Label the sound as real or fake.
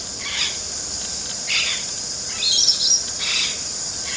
real